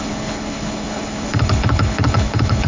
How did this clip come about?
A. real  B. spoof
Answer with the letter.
B